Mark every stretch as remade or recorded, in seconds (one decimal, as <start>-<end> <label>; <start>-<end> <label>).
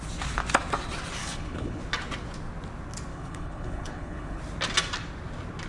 0.0-1.2 recorded; 1.2-1.8 remade; 1.8-3.1 recorded; 3.1-4.4 remade; 4.4-5.7 recorded